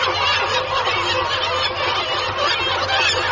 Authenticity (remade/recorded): recorded